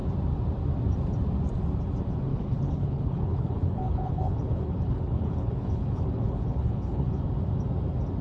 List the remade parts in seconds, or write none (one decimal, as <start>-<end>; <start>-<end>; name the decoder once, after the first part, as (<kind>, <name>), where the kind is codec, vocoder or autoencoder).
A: 2.3-7.2 (codec, HILCodec)

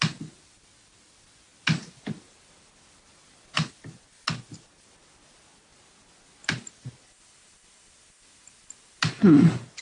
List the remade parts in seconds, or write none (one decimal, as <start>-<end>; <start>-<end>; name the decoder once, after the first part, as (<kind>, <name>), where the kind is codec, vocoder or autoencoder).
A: none

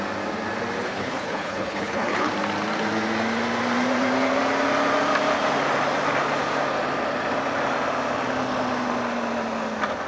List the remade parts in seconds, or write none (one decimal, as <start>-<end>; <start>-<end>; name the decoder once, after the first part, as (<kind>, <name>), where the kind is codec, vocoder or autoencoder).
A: 0.8-2.3 (codec, HILCodec)

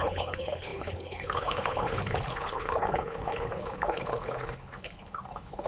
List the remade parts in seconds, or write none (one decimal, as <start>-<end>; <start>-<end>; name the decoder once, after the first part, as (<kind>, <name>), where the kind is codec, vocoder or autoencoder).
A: 0.0-5.7 (codec, HILCodec)

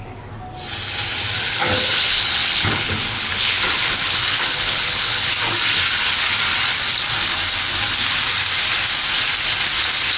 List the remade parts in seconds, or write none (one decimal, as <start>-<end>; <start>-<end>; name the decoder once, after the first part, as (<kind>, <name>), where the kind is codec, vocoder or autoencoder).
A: 1.4-5.3 (codec, HILCodec)

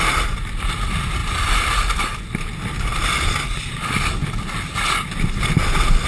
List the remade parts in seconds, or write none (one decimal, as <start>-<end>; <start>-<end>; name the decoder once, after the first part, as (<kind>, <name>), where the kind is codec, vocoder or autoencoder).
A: none

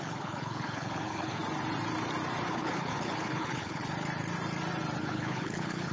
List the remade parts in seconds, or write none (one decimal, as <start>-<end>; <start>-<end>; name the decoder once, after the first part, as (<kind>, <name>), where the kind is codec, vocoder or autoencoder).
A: 0.0-1.4 (codec, HILCodec); 2.5-3.8; 5.0-5.9

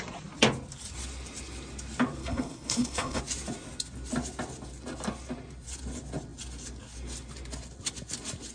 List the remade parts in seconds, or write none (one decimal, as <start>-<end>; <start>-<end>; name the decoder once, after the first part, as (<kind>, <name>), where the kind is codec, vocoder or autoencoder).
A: 2.2-3.2 (codec, HILCodec)